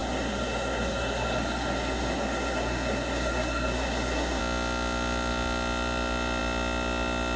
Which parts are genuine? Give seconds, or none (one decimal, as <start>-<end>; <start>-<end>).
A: 4.4-7.4

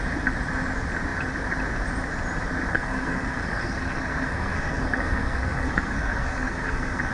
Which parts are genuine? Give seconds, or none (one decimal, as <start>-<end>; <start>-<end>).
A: 0.0-2.7

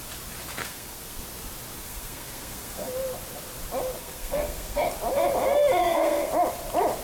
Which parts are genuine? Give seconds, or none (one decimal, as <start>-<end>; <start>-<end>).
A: 0.0-0.6; 1.2-1.8; 2.9-4.0; 4.9-5.8; 6.3-7.0

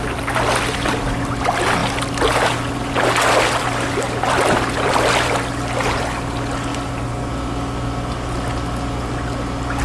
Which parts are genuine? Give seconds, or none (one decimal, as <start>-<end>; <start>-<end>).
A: 0.0-9.8

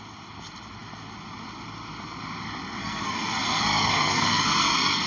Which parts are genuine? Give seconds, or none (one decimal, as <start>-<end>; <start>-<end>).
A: 0.0-2.8

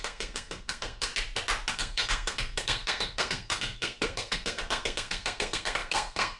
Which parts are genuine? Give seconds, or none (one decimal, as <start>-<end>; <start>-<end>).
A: 1.1-1.7